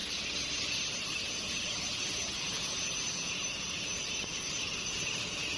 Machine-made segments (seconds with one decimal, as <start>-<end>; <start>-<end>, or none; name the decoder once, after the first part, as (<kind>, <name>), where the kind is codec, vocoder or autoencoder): 1.2-5.6 (vocoder, Vocos)